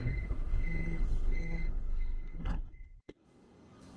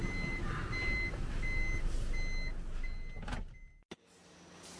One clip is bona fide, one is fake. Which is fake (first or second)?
first